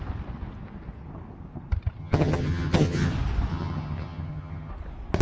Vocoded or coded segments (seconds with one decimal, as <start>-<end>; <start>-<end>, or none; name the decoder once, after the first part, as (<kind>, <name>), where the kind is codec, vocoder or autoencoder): 2.0-3.1 (vocoder, HiFi-GAN); 3.5-4.7